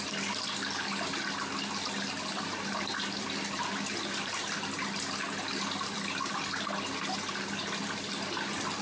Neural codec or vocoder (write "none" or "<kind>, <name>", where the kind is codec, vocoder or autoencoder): none